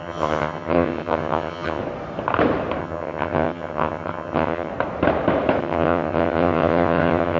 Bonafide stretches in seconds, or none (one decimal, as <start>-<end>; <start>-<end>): 1.8-2.8; 4.7-5.6